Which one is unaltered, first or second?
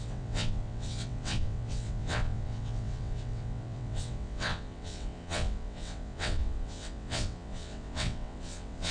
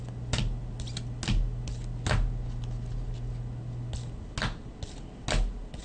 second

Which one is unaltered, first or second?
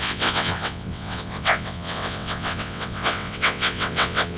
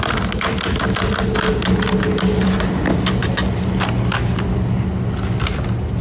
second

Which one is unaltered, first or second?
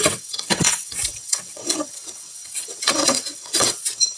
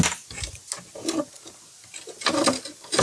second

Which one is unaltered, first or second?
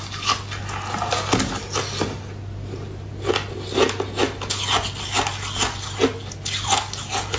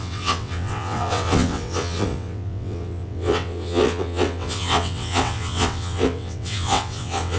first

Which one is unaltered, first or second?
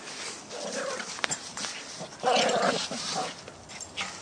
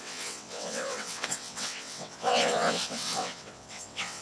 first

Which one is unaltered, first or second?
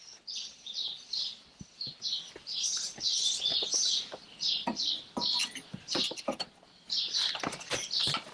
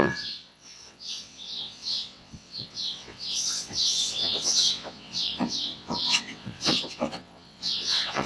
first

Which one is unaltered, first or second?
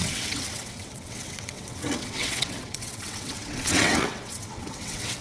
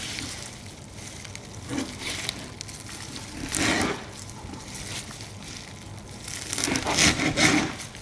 second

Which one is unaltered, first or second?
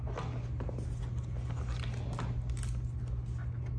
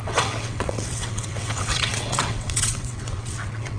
first